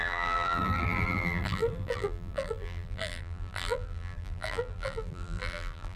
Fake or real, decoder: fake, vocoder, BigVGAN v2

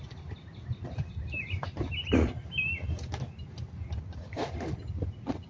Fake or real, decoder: real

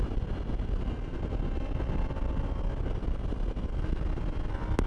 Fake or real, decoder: real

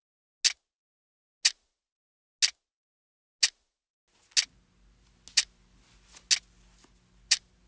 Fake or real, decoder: real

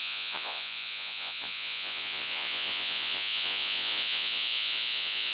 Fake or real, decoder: fake, vocoder, Vocos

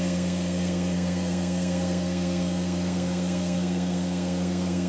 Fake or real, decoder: fake, codec, SNAC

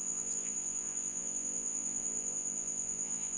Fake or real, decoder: fake, vocoder, Vocos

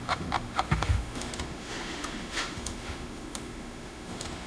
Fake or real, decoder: fake, autoencoder, DAC-VAE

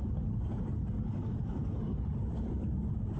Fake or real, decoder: real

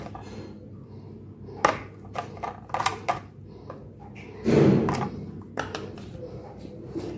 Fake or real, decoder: real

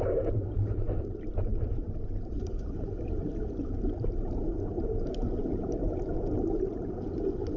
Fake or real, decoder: fake, vocoder, BigVGAN v2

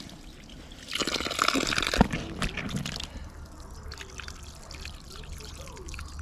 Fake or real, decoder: real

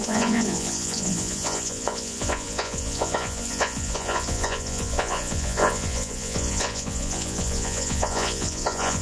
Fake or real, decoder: fake, vocoder, Vocos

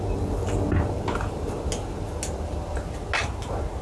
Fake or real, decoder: real